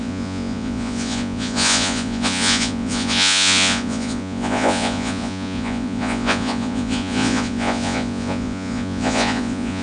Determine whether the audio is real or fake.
fake